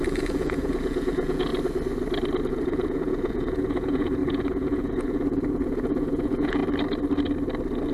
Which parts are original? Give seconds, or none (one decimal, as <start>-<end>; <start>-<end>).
1.5-2.5; 6.6-7.9